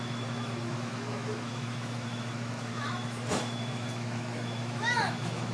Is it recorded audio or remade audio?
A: remade